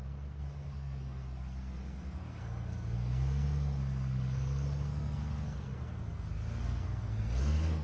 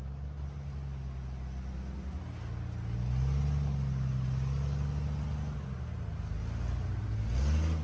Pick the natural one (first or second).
second